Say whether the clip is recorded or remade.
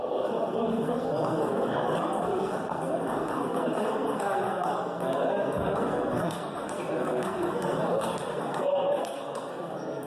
remade